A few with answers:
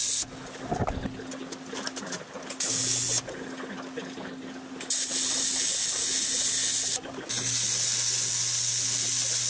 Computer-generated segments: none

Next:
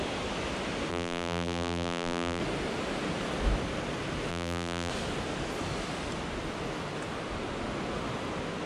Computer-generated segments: 0.9-2.4 (vocoder, BigVGAN v2); 4.3-4.9

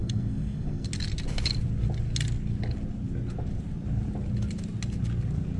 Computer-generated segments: 0.0-0.9 (codec, SNAC)

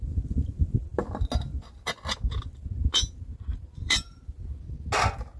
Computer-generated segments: 3.5-4.2 (vocoder, BigVGAN v2)

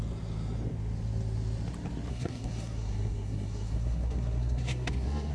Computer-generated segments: 2.1-5.3 (codec, SNAC)